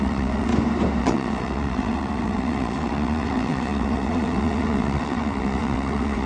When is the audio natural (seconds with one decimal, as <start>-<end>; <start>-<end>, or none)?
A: 0.5-1.0